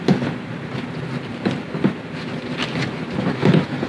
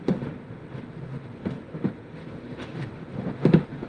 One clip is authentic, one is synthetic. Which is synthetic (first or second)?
second